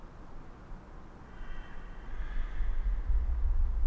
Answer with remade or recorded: recorded